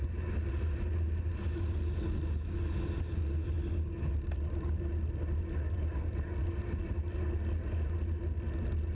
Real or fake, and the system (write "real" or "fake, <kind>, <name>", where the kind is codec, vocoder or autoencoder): real